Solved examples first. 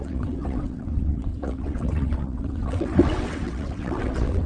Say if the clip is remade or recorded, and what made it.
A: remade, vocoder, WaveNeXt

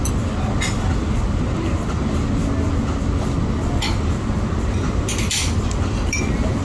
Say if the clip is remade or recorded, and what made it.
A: recorded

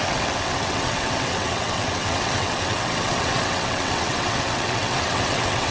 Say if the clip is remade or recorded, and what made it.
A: remade, vocoder, WaveNeXt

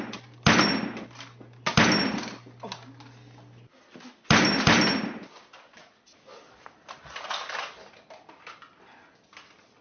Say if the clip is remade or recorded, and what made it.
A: recorded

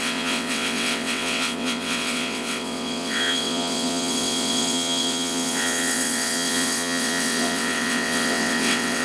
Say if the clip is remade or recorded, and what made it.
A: remade, vocoder, WaveNeXt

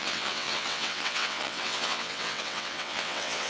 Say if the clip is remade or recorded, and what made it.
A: remade, vocoder, WaveNeXt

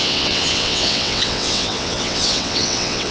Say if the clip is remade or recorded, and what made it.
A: remade, vocoder, WaveNeXt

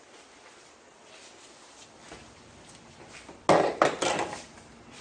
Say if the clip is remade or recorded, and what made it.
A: recorded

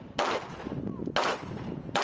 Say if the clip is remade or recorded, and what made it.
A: recorded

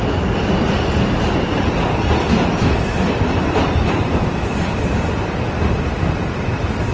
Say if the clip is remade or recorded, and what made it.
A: recorded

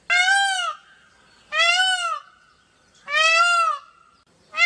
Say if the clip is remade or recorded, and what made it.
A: recorded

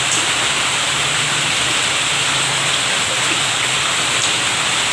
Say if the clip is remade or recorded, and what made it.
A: recorded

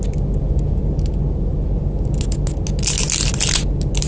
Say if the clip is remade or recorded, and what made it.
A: recorded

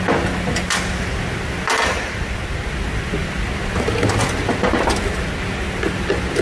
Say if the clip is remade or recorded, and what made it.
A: recorded